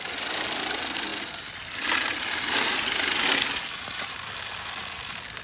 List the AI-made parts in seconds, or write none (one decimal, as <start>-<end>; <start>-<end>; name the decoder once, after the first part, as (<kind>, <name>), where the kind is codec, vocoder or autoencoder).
none